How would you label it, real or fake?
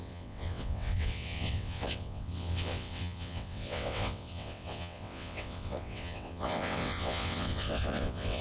fake